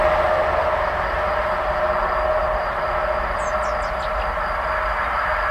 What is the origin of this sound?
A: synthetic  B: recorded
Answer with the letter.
B